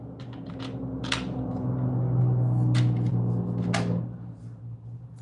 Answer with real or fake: real